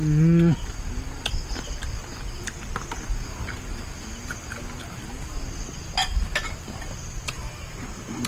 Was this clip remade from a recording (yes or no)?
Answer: no